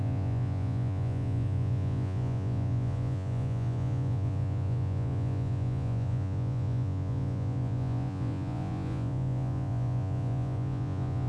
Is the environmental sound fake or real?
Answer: fake